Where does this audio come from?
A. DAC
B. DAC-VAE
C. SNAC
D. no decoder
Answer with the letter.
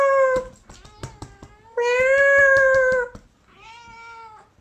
D